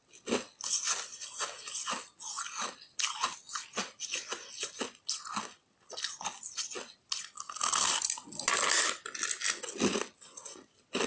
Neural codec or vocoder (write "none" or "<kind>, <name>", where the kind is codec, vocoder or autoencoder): none